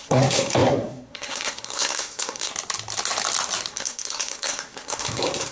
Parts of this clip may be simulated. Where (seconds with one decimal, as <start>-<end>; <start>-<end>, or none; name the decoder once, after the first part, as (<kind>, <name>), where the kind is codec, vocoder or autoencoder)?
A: 0.0-2.5 (codec, SNAC); 3.7-5.5